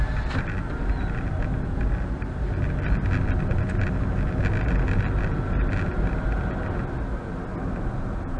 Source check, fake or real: real